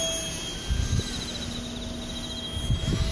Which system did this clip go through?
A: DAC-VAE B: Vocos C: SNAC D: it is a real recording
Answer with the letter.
D